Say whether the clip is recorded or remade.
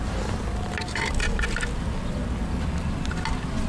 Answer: recorded